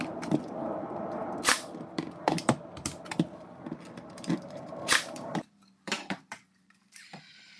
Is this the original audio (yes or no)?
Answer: no